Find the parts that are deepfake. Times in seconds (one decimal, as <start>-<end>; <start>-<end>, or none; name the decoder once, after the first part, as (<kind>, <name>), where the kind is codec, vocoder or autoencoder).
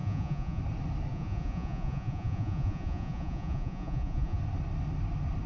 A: 0.0-0.6 (vocoder, Vocos); 1.1-4.4